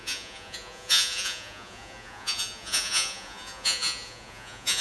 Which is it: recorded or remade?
remade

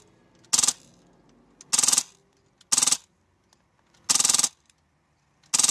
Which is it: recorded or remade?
recorded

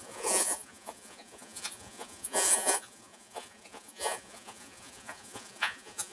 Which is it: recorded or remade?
remade